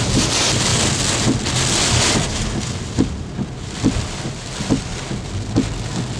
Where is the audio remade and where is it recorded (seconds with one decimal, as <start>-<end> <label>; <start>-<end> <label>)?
0.0-6.2 recorded